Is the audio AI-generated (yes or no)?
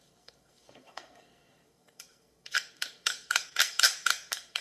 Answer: yes